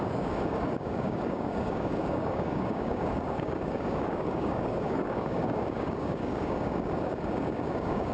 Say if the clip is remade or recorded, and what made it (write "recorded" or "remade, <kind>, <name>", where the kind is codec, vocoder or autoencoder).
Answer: remade, codec, DAC